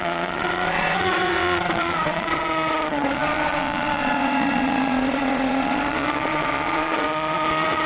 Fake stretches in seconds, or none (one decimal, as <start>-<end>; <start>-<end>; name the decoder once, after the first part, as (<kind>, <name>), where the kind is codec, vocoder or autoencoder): 0.0-7.9 (vocoder, Vocos)